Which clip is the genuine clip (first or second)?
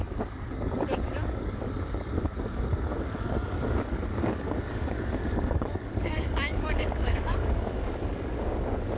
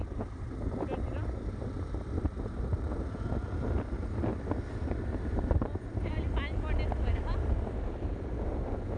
second